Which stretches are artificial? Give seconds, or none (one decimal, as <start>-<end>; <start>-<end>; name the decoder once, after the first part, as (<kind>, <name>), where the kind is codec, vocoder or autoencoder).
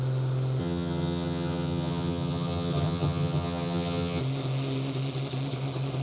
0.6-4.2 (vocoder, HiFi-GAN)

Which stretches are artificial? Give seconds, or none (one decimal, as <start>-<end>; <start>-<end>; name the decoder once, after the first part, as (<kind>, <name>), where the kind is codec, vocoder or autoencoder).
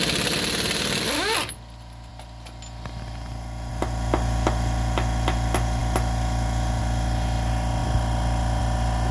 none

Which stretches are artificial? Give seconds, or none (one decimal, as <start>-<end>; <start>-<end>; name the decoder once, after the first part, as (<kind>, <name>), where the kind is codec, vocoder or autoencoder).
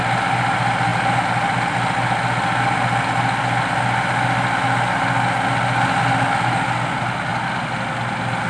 none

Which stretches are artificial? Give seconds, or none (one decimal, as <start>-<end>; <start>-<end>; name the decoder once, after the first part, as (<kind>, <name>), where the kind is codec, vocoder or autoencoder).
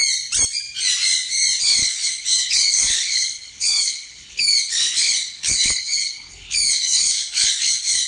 1.6-8.1 (codec, HILCodec)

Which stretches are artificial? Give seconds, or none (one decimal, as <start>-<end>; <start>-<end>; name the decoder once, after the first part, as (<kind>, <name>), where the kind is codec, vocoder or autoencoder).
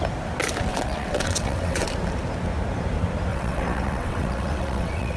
0.7-1.9 (vocoder, WaveNeXt); 3.3-5.2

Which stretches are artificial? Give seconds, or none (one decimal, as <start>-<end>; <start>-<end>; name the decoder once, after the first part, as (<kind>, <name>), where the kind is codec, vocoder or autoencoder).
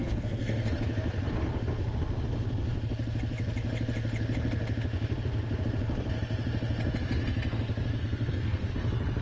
0.0-0.7 (codec, SNAC); 8.0-8.7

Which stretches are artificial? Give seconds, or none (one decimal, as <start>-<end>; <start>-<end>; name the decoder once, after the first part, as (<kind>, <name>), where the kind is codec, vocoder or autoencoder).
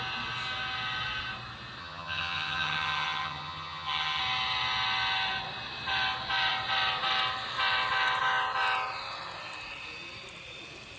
1.8-4.2 (vocoder, HiFi-GAN)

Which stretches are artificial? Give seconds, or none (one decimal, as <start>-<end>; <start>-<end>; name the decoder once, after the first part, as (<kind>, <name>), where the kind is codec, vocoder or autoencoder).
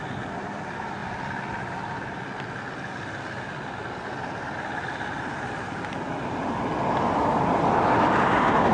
none